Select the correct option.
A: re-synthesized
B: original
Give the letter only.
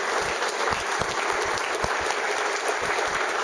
B